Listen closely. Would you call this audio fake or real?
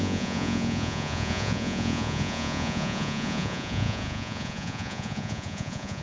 fake